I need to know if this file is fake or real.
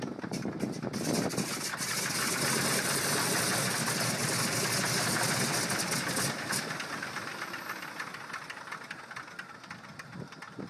real